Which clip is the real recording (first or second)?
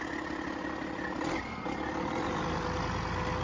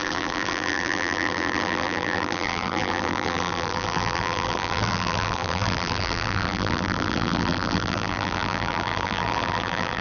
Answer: first